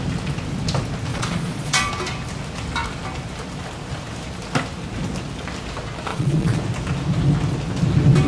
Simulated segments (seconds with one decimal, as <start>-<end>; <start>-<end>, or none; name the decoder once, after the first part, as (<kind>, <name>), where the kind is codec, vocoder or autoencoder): 1.1-1.9 (vocoder, Vocos); 6.1-6.6

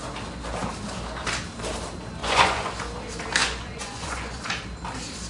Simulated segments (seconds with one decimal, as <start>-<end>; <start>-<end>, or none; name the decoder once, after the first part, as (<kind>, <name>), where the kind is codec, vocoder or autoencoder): 2.2-2.7 (vocoder, Vocos); 3.4-4.4

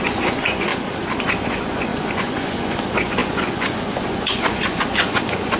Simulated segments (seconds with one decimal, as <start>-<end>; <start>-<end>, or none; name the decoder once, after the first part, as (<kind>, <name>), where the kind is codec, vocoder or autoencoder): 0.0-0.7 (vocoder, Vocos); 1.2-5.6

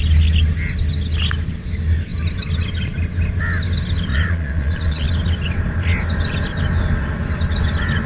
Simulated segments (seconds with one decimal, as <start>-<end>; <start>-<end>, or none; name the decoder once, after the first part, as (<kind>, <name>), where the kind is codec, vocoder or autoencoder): 4.1-5.1 (vocoder, Vocos)

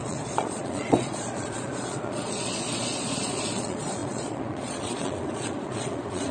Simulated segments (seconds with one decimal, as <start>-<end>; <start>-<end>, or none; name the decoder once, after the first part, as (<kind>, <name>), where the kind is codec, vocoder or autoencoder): 0.0-6.3 (vocoder, Vocos)

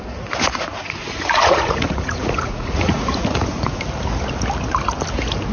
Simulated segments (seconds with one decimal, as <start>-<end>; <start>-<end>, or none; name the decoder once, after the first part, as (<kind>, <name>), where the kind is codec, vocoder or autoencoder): 0.7-3.8 (vocoder, Vocos)

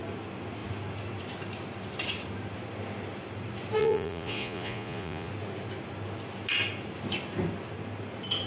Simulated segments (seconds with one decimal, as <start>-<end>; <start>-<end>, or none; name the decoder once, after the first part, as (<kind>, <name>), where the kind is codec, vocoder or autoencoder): 3.8-5.3 (vocoder, Vocos)